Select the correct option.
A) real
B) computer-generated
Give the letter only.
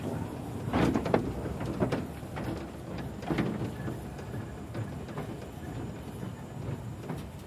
A